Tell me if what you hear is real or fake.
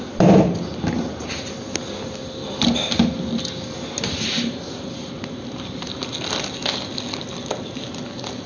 real